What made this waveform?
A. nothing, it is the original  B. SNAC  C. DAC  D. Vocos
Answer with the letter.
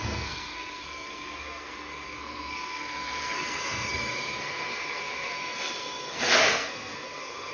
B